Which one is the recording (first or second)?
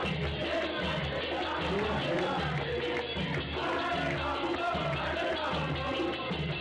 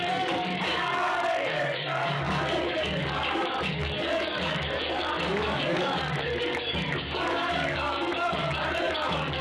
first